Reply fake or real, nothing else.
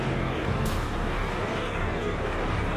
fake